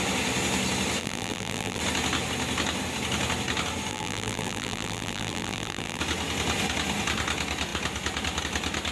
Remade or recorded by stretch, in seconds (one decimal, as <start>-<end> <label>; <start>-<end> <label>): 0.0-1.0 recorded; 1.0-1.8 remade; 1.8-3.9 recorded; 3.9-6.0 remade; 6.0-8.9 recorded